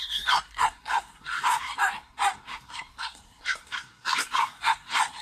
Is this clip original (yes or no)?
no